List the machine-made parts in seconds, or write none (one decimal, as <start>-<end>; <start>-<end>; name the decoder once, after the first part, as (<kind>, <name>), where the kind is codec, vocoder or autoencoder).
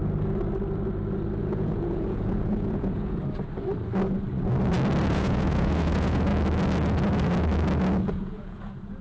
1.4-3.2 (vocoder, Vocos); 5.1-6.3; 8.0-9.0